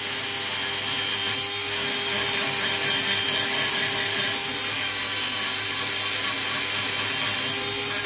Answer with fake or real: real